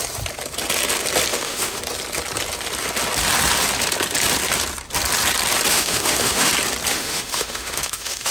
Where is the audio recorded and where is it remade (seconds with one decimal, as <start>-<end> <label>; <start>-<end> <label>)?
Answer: 0.0-1.3 recorded; 1.3-1.8 remade; 1.8-5.7 recorded; 5.7-6.5 remade; 6.5-6.9 recorded; 6.9-8.3 remade